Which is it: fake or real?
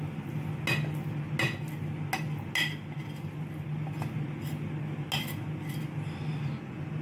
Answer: real